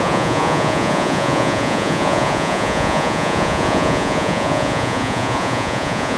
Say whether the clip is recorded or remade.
remade